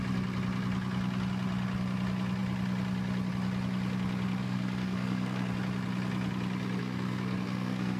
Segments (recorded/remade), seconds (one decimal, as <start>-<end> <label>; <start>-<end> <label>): 0.0-4.4 recorded; 4.4-5.5 remade; 5.5-6.8 recorded; 6.8-8.0 remade